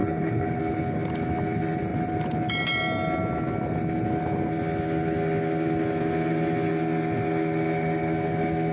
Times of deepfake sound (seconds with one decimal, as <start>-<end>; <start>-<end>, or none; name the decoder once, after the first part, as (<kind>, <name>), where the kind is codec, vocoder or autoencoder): 0.0-0.6 (codec, HILCodec)